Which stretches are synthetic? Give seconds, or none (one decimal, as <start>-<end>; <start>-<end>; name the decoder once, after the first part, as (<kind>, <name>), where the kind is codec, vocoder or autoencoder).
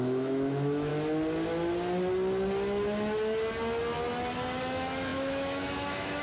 0.0-0.9 (autoencoder, DAC-VAE); 4.6-6.2